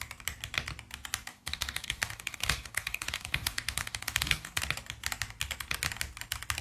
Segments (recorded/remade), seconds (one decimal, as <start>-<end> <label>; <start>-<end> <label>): 0.0-1.3 recorded; 1.3-4.6 remade; 4.6-6.6 recorded